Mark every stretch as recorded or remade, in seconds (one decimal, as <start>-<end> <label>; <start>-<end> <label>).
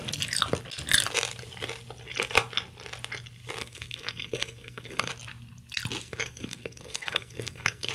0.0-3.6 recorded; 3.6-5.1 remade; 5.1-6.0 recorded; 6.0-7.9 remade